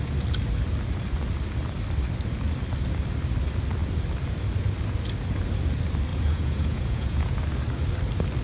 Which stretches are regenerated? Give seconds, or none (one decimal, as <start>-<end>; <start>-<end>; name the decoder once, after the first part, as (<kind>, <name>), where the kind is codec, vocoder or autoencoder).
6.1-7.4 (vocoder, Vocos)